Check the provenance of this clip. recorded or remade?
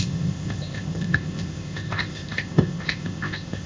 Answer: remade